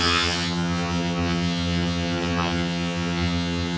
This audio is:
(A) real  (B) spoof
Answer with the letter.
B